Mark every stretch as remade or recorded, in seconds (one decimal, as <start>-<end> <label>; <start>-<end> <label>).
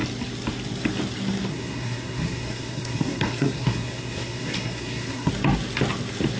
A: 0.0-1.5 recorded; 1.5-5.3 remade; 5.3-6.4 recorded